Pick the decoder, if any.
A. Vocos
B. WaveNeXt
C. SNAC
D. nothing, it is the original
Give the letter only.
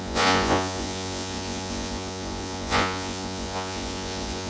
A